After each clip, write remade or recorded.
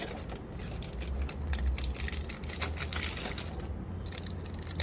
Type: recorded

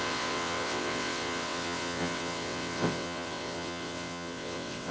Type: remade